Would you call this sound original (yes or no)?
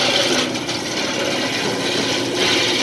yes